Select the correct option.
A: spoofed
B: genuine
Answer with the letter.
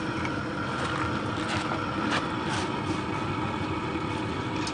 B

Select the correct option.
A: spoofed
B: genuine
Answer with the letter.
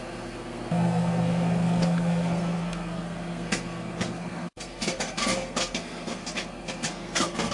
A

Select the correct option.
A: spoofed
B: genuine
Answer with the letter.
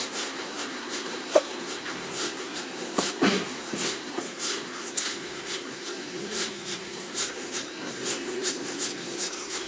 A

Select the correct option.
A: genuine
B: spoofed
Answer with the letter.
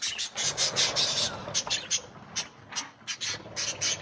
A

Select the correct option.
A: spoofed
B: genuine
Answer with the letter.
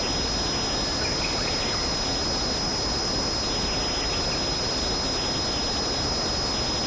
B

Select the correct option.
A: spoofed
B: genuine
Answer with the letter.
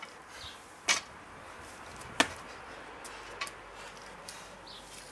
B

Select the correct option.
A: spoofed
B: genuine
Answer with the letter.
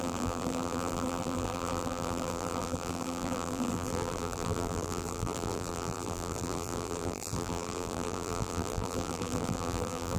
A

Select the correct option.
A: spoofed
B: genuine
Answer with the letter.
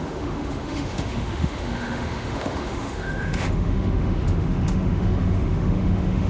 A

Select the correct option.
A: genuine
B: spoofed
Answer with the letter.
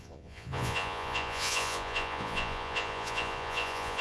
B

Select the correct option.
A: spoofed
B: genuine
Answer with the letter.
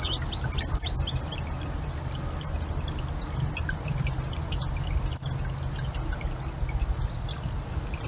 B